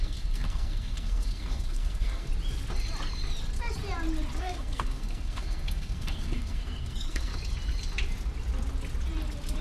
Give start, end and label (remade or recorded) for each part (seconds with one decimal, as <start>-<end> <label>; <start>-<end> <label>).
0.0-2.3 remade; 2.3-4.4 recorded; 4.4-7.3 remade; 7.3-9.6 recorded

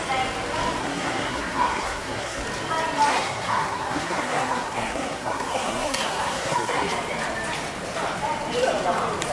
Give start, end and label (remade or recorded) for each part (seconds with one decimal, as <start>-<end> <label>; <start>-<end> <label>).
0.0-0.8 recorded; 0.8-2.4 remade; 2.4-3.1 recorded; 3.1-6.9 remade; 6.9-9.3 recorded

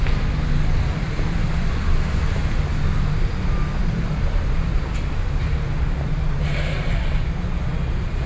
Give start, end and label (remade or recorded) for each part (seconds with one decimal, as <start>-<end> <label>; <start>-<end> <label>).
0.0-1.4 recorded; 1.4-2.4 remade; 2.4-3.8 recorded; 3.8-7.1 remade; 7.1-8.3 recorded

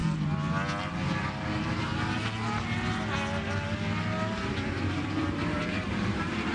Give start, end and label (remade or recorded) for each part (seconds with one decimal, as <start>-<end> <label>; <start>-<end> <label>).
0.0-0.8 recorded; 0.8-1.9 remade; 1.9-4.7 recorded; 4.7-6.5 remade

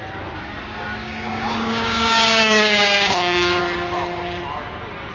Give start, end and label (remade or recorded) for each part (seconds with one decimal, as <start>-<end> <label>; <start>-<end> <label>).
0.0-1.0 recorded; 1.0-3.6 remade; 3.6-5.1 recorded

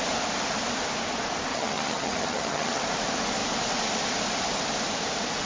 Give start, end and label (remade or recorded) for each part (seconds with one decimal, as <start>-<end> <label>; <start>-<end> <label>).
0.0-1.5 recorded; 1.5-2.8 remade; 2.8-5.5 recorded